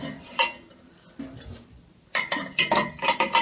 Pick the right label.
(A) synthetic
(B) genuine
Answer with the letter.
A